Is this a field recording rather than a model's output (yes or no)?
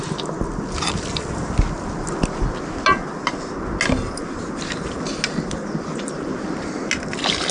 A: yes